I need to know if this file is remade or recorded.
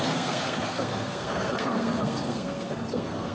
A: remade